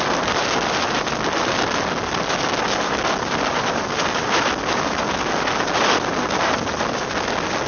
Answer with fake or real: real